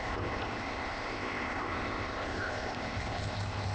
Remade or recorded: remade